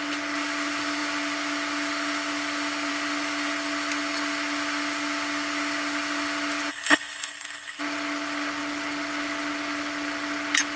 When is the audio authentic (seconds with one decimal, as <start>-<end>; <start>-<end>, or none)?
0.0-6.7; 7.8-10.8